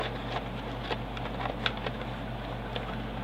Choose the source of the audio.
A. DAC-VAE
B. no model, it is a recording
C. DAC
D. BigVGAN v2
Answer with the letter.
B